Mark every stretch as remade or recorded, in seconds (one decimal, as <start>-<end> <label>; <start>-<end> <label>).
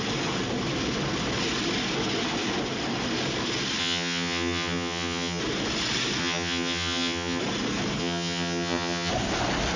0.0-3.8 recorded; 3.8-5.4 remade; 5.4-6.2 recorded; 6.2-7.4 remade; 7.4-8.0 recorded; 8.0-9.1 remade; 9.1-9.8 recorded